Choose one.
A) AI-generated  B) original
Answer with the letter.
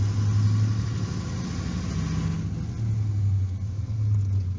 B